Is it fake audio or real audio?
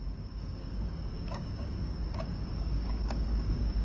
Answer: fake